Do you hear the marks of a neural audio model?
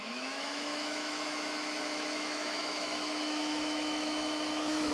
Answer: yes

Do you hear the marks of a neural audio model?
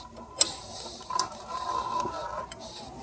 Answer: yes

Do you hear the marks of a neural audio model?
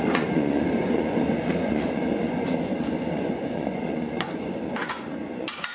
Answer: yes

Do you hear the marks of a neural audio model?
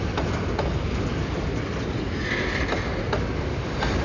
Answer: no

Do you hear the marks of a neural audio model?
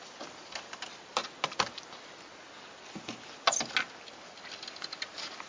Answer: no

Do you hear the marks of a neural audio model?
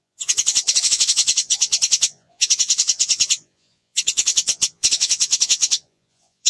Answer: yes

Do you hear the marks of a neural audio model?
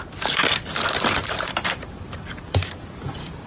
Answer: no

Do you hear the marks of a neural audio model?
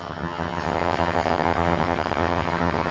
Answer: yes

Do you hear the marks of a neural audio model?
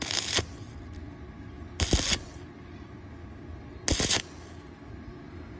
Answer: no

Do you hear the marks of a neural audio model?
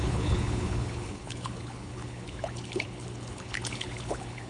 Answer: yes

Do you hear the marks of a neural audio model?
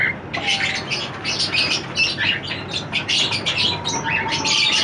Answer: no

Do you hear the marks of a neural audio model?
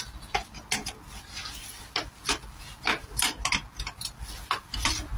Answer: no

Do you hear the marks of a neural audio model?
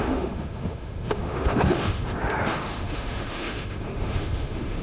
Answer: yes